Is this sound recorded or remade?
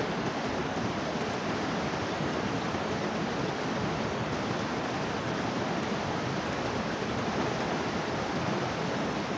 recorded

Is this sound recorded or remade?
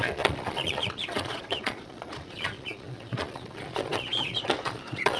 remade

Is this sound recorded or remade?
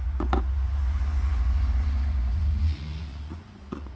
remade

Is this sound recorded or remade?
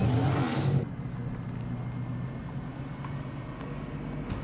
recorded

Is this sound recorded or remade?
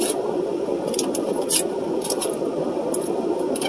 recorded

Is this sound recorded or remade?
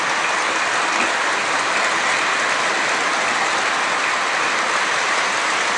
recorded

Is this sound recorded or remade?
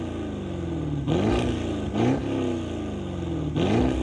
recorded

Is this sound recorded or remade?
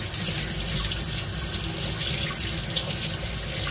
recorded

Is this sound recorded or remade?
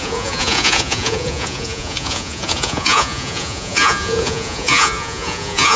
remade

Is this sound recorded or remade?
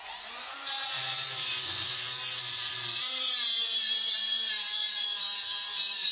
remade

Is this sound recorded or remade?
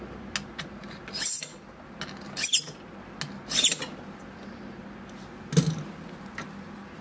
recorded